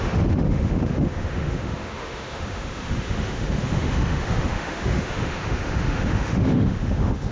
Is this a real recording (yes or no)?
no